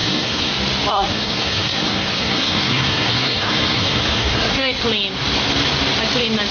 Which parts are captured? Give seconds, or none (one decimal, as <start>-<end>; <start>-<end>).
0.5-0.9; 4.8-6.5